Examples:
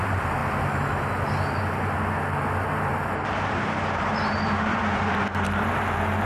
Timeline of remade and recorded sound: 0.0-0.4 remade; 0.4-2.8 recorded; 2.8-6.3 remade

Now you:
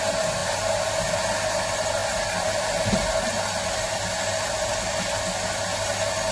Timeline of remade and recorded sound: 0.0-6.3 recorded

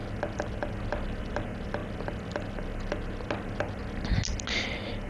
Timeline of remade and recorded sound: 0.0-5.1 recorded

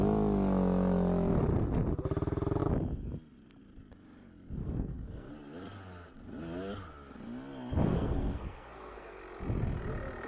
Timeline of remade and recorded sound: 0.0-4.6 recorded; 4.6-5.3 remade; 5.3-7.9 recorded; 7.9-9.2 remade; 9.2-10.3 recorded

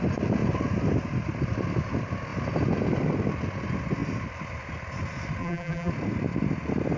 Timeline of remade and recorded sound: 0.0-5.4 recorded; 5.4-5.9 remade; 5.9-7.0 recorded

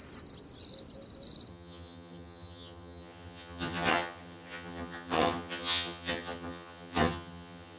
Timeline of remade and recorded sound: 0.0-1.5 recorded; 1.5-7.8 remade